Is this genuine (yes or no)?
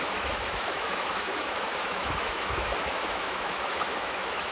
no